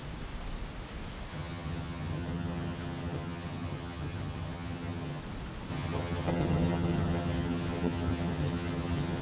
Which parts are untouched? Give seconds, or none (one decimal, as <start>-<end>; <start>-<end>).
0.0-1.3; 5.2-5.7